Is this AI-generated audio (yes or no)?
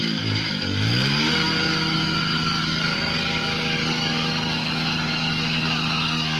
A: yes